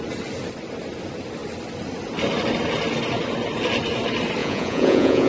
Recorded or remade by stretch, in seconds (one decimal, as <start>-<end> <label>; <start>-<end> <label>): 0.0-4.4 recorded; 4.4-5.3 remade